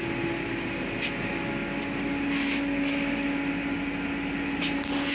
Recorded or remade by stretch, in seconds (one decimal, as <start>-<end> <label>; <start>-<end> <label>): 0.0-5.1 recorded